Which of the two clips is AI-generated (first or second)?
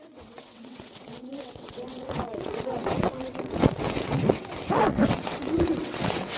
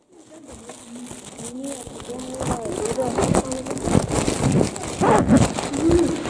first